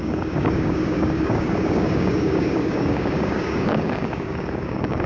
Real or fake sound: fake